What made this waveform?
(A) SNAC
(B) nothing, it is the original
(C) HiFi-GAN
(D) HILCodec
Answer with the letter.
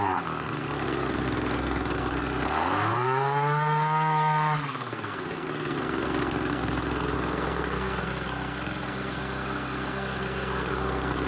A